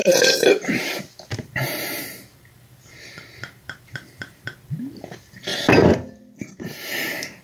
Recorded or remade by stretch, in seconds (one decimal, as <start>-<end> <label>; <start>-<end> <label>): 0.0-5.5 remade; 5.5-6.5 recorded; 6.5-7.4 remade